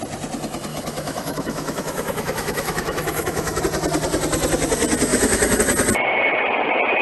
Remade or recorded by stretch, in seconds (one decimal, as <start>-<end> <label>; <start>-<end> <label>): 0.0-0.7 recorded; 0.7-3.6 remade; 3.6-5.1 recorded; 5.1-5.6 remade; 5.6-7.0 recorded